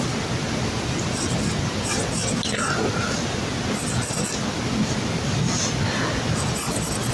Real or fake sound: real